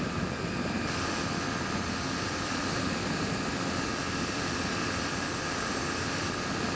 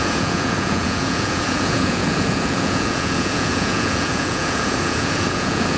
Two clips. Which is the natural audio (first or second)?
first